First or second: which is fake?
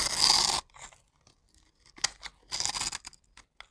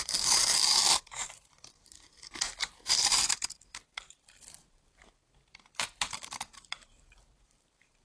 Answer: second